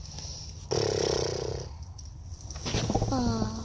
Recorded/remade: recorded